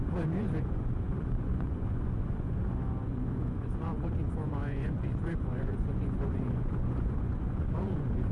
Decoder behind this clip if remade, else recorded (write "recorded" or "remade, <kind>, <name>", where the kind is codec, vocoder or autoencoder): remade, vocoder, Vocos